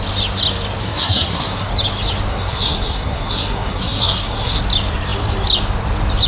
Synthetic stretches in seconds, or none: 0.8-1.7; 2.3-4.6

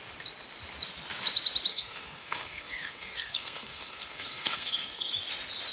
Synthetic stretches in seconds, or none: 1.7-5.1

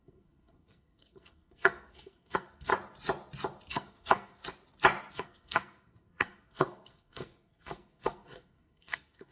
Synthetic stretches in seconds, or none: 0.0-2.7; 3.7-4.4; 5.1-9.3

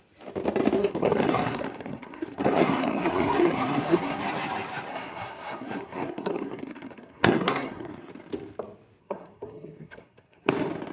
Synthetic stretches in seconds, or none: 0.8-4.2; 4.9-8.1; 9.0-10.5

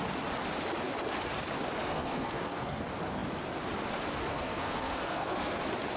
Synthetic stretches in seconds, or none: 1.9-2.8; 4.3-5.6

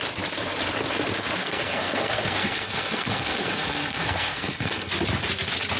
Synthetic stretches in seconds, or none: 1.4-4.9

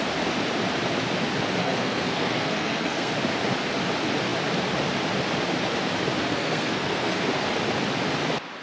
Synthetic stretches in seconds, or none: 1.6-3.1; 6.3-7.2